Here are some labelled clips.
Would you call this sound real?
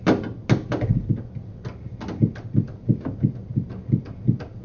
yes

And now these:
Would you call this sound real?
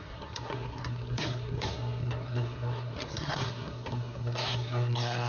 no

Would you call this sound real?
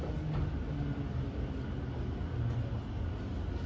yes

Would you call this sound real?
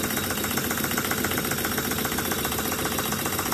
yes